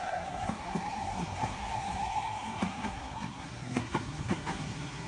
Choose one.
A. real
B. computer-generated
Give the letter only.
B